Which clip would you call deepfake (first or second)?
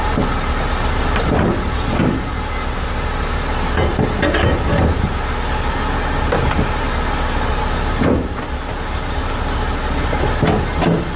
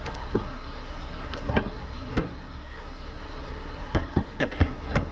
second